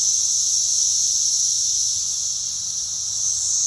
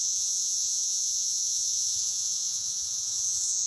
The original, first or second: first